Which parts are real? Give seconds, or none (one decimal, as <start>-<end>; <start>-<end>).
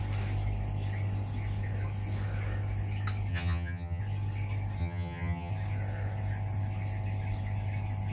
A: 0.0-3.3; 4.0-4.8; 5.5-8.1